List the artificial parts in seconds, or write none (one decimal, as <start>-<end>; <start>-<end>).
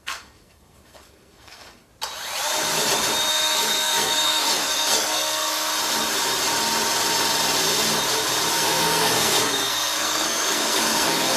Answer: 0.0-1.9; 3.3-5.7; 8.5-11.4